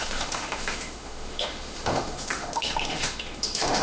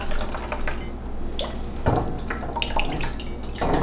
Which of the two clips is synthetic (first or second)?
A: first